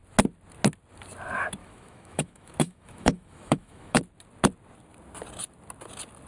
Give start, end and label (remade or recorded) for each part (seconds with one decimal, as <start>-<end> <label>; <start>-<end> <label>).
0.0-1.6 recorded; 1.6-4.0 remade; 4.0-6.3 recorded

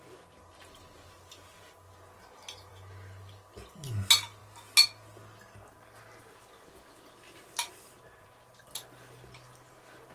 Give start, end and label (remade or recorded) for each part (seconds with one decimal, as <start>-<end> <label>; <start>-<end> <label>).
0.0-10.1 recorded

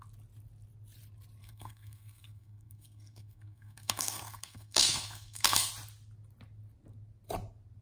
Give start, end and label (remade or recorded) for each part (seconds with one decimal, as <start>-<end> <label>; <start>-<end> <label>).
0.0-1.4 recorded; 1.4-5.7 remade; 5.7-7.8 recorded

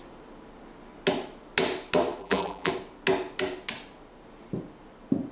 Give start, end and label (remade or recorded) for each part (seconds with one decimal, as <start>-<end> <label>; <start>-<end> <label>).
0.0-2.2 recorded; 2.2-2.7 remade; 2.7-5.3 recorded

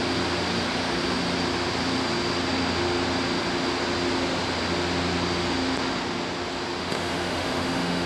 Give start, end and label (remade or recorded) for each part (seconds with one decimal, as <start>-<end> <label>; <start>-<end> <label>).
0.0-6.8 recorded; 6.8-8.1 remade

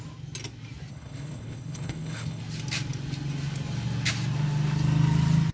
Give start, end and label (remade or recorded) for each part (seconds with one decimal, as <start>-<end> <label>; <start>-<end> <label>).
0.0-0.9 recorded; 0.9-2.4 remade; 2.4-5.5 recorded

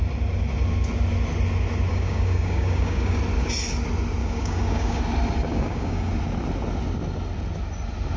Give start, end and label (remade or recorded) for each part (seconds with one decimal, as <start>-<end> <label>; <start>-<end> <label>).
0.0-1.9 recorded; 1.9-3.2 remade; 3.2-4.2 recorded; 4.2-5.0 remade; 5.0-5.5 recorded; 5.5-6.1 remade; 6.1-8.2 recorded

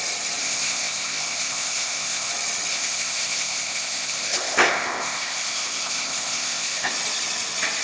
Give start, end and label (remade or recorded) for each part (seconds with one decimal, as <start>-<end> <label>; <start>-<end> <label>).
0.0-0.4 recorded; 0.4-2.3 remade; 2.3-2.7 recorded; 2.7-6.9 remade; 6.9-7.8 recorded